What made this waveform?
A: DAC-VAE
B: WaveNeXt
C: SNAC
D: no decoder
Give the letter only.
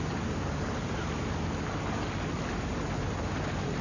D